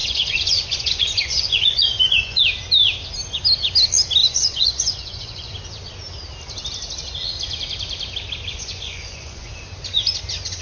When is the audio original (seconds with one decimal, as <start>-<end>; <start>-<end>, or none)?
2.4-4.2; 5.5-8.5; 9.5-10.6